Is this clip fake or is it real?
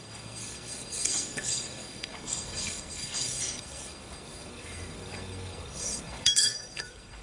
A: fake